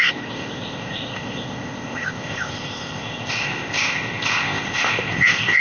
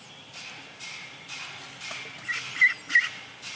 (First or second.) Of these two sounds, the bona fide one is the second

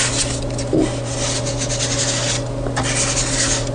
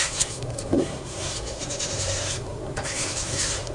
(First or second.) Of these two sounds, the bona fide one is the first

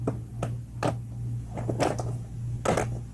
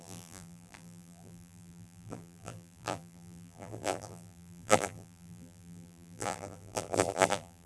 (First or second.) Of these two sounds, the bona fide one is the first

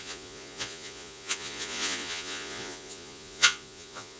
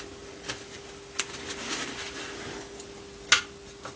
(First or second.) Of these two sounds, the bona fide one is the second